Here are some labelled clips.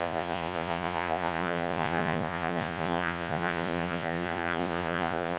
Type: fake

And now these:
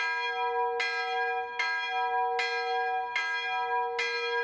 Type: real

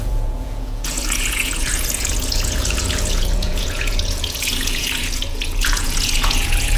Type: fake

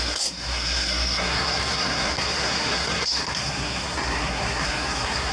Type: fake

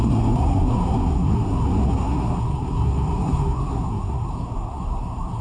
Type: fake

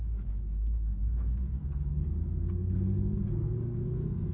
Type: fake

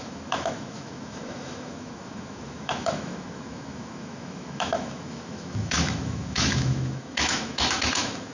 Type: fake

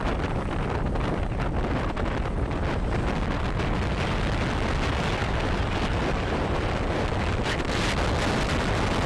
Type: real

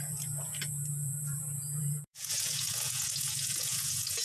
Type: fake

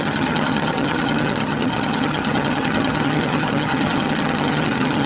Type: fake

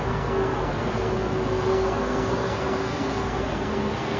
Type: fake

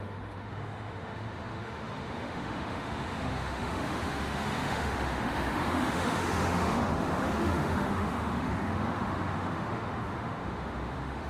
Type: fake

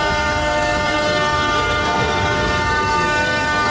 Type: fake